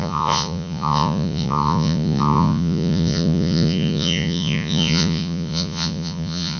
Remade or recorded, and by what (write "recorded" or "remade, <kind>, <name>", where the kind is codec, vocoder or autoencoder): remade, vocoder, Vocos